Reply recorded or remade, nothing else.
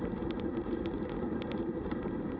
remade